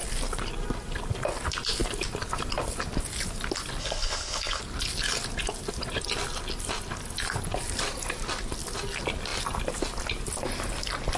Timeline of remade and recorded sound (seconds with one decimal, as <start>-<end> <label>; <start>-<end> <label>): 0.0-3.8 recorded; 3.8-4.6 remade; 4.6-11.2 recorded